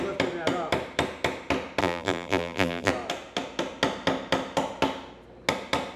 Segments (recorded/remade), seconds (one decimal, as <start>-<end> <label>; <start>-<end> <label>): 0.0-1.8 recorded; 1.8-2.9 remade; 2.9-6.0 recorded